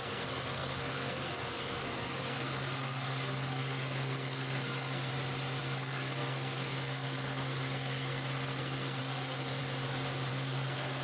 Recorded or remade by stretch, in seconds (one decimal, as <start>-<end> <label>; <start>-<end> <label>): 0.0-5.1 remade; 5.1-5.6 recorded; 5.6-9.6 remade; 9.6-10.3 recorded; 10.3-11.0 remade